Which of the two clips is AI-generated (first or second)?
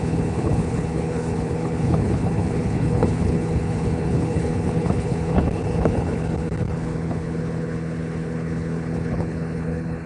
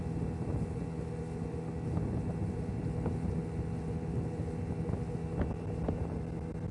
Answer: first